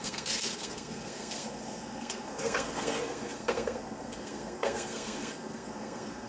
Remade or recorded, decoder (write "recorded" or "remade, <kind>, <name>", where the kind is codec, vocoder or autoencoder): remade, codec, SNAC